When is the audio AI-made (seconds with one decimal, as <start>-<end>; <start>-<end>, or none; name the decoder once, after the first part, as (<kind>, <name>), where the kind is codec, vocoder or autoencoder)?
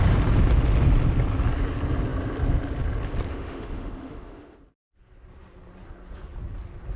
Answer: 3.3-4.6 (autoencoder, DAC-VAE)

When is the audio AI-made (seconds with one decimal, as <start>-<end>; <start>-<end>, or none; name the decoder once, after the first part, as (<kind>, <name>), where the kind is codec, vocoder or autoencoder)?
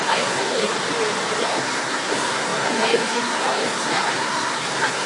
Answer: 0.0-0.7 (codec, SNAC); 1.4-5.1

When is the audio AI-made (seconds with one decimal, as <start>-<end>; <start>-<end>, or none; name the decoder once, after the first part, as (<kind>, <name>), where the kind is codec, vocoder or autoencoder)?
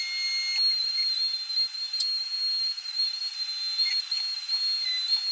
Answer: none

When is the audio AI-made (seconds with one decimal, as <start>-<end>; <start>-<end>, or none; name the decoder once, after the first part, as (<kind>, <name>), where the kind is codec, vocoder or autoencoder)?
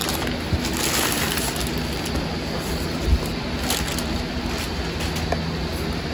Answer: none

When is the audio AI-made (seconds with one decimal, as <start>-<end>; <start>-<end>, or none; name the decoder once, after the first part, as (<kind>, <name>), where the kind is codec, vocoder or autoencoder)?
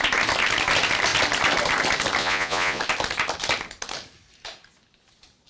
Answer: 2.2-2.8 (vocoder, Vocos)